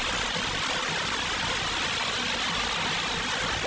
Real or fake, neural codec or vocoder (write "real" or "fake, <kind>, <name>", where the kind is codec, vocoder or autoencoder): real